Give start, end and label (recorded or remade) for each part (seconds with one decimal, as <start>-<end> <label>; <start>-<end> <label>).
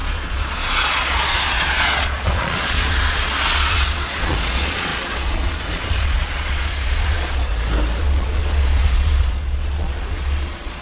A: 0.0-7.5 remade; 7.5-8.0 recorded; 8.0-10.8 remade